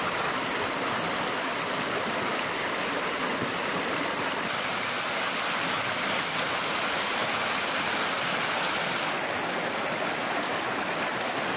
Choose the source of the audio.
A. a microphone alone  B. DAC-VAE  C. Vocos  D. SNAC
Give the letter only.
A